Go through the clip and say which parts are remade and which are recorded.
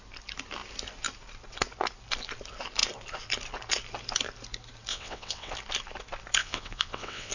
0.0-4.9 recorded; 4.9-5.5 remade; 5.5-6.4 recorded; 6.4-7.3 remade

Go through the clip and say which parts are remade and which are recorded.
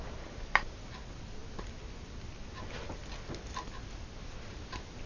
0.0-5.1 recorded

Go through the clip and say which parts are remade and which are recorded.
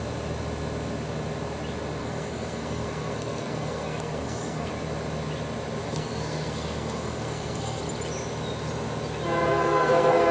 0.0-2.0 recorded; 2.0-4.7 remade; 4.7-5.8 recorded; 5.8-7.8 remade; 7.8-9.5 recorded; 9.5-10.3 remade